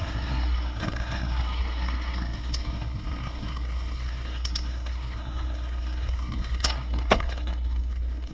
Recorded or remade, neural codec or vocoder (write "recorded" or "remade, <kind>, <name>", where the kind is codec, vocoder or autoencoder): remade, codec, SNAC